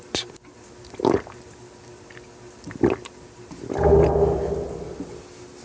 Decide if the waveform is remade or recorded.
recorded